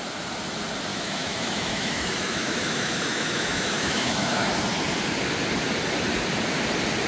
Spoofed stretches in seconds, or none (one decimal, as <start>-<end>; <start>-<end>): 0.9-4.5